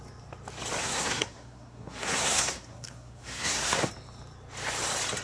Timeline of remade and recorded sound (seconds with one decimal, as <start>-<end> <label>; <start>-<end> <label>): 0.0-0.8 recorded; 0.8-3.9 remade; 3.9-5.2 recorded